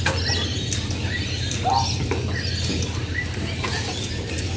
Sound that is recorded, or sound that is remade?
recorded